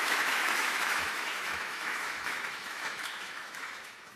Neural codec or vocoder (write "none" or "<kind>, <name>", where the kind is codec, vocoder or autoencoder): autoencoder, DAC-VAE